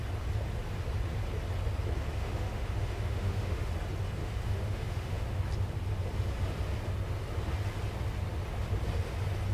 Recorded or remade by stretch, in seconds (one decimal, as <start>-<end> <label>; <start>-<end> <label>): 0.0-2.1 recorded; 2.1-3.7 remade; 3.7-4.2 recorded; 4.2-5.4 remade; 5.4-9.5 recorded